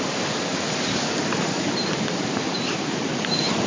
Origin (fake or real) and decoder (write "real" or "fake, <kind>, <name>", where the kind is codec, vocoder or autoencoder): fake, vocoder, BigVGAN v2